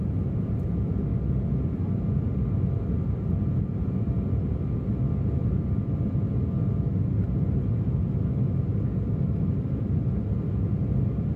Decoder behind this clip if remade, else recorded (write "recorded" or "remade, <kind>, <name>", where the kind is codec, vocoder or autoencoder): recorded